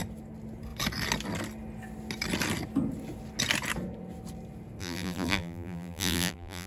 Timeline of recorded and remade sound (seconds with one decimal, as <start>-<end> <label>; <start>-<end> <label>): 0.0-4.8 recorded; 4.8-6.7 remade